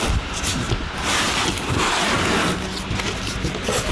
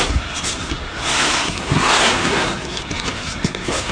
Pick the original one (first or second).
first